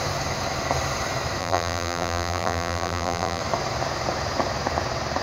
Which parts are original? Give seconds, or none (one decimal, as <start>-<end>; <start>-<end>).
0.0-1.4; 3.4-5.2